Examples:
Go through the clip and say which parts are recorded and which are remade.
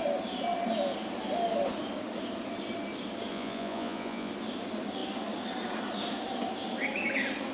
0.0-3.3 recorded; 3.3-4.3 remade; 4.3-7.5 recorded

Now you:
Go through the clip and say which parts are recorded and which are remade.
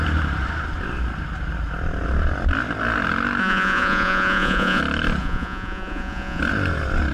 0.0-3.4 recorded; 3.4-4.8 remade; 4.8-5.2 recorded; 5.2-6.4 remade; 6.4-7.1 recorded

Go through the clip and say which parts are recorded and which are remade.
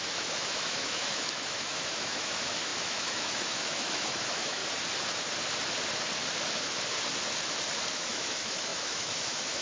0.0-4.6 remade; 4.6-7.9 recorded; 7.9-9.6 remade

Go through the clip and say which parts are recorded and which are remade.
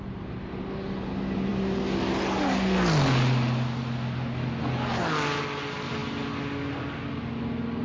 0.0-7.8 recorded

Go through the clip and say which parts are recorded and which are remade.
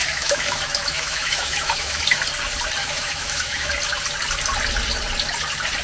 0.0-2.0 remade; 2.0-2.8 recorded; 2.8-3.7 remade; 3.7-5.8 recorded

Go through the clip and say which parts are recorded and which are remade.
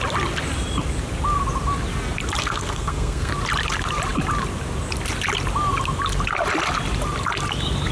0.0-2.4 recorded; 2.4-3.3 remade; 3.3-7.9 recorded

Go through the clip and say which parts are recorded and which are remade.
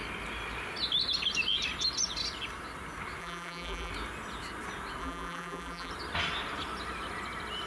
0.0-3.2 recorded; 3.2-3.9 remade; 3.9-5.0 recorded; 5.0-5.9 remade; 5.9-7.7 recorded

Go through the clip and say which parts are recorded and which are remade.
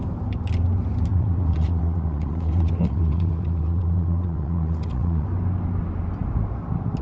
0.0-1.1 recorded; 1.1-5.3 remade; 5.3-7.0 recorded